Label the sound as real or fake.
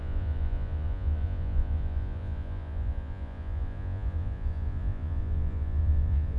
fake